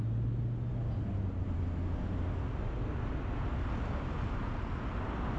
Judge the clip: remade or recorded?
recorded